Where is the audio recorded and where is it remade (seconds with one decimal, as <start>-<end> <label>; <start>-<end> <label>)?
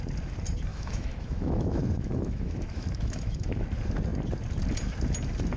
0.0-0.7 recorded; 0.7-3.6 remade; 3.6-5.6 recorded